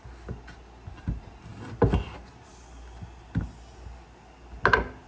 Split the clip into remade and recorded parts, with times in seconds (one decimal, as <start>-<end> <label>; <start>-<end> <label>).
0.0-5.1 recorded

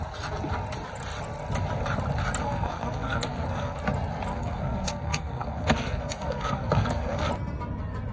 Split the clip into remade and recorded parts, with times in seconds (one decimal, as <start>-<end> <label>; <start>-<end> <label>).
0.0-2.4 recorded; 2.4-3.8 remade; 3.8-4.3 recorded; 4.3-7.3 remade; 7.3-8.1 recorded

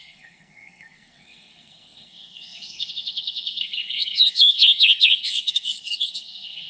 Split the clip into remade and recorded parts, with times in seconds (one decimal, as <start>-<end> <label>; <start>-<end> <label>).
0.0-6.7 remade

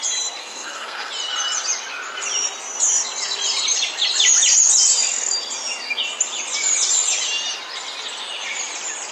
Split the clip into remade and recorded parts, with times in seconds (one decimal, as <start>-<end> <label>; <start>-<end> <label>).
0.0-0.4 recorded; 0.4-1.1 remade; 1.1-9.1 recorded

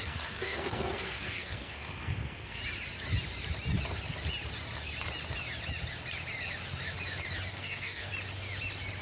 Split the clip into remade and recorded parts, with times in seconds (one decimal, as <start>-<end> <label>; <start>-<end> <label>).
0.0-2.6 remade; 2.6-7.5 recorded; 7.5-8.1 remade; 8.1-9.0 recorded

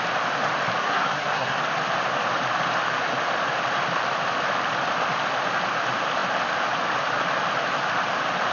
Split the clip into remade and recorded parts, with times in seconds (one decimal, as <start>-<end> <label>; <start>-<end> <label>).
0.0-0.8 recorded; 0.8-1.6 remade; 1.6-8.5 recorded

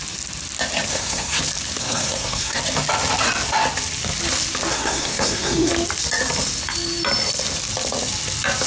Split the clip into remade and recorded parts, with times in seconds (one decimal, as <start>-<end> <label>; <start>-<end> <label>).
0.0-0.9 recorded; 0.9-1.4 remade; 1.4-1.8 recorded; 1.8-2.6 remade; 2.6-4.7 recorded; 4.7-5.7 remade; 5.7-8.7 recorded

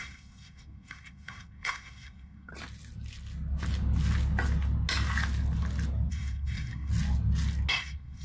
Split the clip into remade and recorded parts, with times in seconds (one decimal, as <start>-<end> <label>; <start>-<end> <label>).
0.0-2.5 remade; 2.5-6.1 recorded; 6.1-6.9 remade; 6.9-7.7 recorded; 7.7-8.2 remade